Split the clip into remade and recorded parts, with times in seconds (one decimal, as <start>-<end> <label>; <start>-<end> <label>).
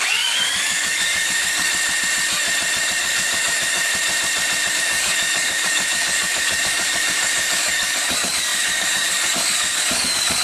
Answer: 0.0-1.7 remade; 1.7-3.0 recorded; 3.0-3.9 remade; 3.9-4.7 recorded; 4.7-10.4 remade